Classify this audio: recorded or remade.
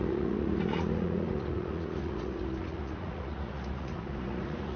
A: remade